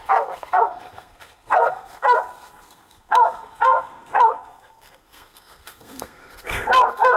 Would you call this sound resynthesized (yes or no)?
yes